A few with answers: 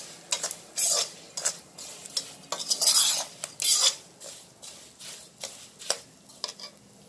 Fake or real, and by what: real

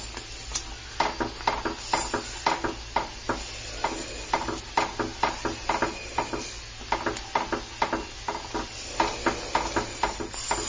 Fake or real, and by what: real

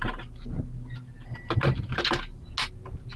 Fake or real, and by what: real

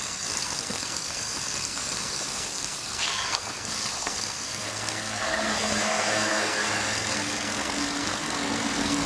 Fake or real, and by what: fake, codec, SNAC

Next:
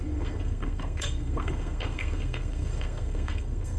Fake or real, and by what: fake, codec, SNAC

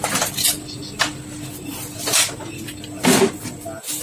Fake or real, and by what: real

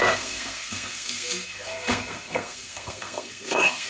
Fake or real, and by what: fake, codec, SNAC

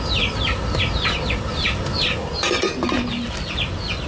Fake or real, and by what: real